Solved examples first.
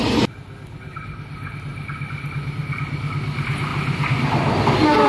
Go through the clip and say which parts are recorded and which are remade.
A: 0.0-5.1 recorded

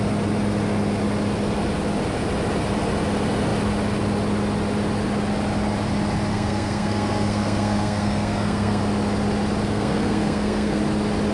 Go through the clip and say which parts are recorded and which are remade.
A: 0.0-6.3 recorded; 6.3-8.8 remade; 8.8-9.6 recorded; 9.6-10.8 remade; 10.8-11.3 recorded